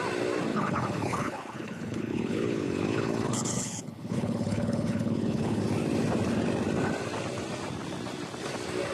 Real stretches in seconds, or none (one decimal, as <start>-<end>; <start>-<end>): 0.0-0.5; 5.6-8.9